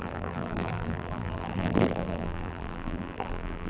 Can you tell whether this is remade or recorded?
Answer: remade